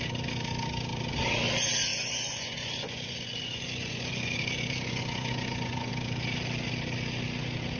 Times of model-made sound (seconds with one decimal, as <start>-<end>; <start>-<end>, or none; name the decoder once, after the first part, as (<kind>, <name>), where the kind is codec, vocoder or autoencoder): 1.9-5.9 (vocoder, Vocos)